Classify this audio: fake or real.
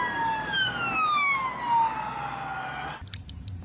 real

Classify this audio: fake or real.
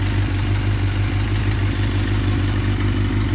real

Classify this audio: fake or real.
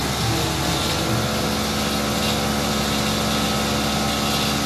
real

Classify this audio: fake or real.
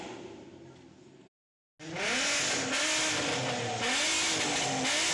real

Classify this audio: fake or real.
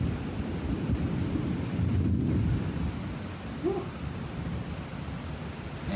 real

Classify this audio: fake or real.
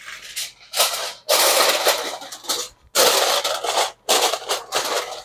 real